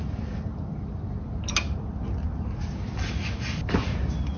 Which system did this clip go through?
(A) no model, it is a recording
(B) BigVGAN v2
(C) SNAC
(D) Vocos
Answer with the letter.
A